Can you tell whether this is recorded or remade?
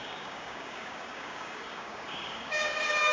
remade